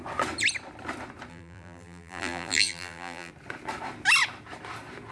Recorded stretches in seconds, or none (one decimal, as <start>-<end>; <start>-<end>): 0.0-1.3; 3.3-5.1